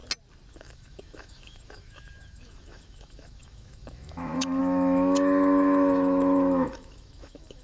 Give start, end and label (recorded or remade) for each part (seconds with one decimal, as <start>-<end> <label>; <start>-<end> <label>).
0.0-0.5 recorded; 0.5-7.6 remade